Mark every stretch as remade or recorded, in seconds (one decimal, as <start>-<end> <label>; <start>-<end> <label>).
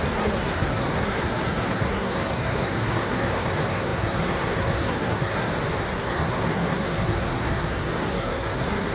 0.0-5.5 remade; 5.5-6.0 recorded; 6.0-8.9 remade